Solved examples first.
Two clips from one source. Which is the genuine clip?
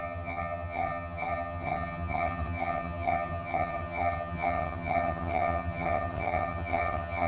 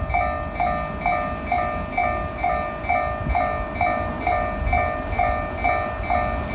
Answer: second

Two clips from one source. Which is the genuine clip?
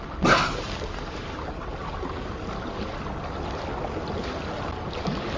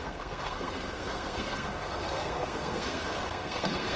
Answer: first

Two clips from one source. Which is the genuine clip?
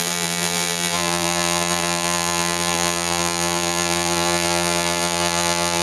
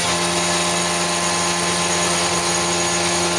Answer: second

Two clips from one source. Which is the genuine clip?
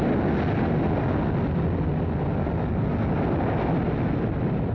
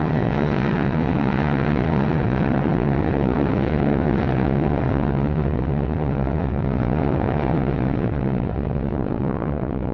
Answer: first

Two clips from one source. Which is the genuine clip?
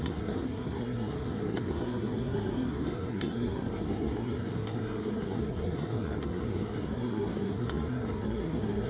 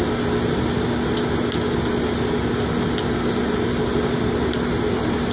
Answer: second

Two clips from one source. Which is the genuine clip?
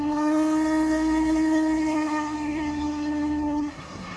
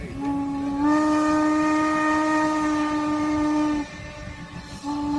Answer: second